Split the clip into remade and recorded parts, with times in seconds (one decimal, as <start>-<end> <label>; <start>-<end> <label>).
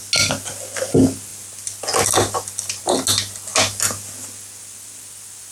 0.0-5.5 recorded